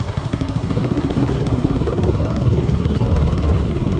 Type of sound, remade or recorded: remade